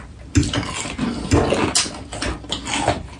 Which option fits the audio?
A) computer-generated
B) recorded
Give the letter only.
B